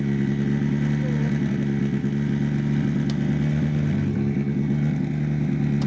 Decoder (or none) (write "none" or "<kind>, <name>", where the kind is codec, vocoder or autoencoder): none